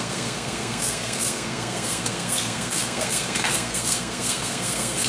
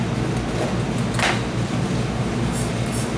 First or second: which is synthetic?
first